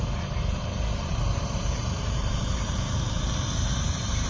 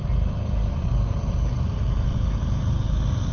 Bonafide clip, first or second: second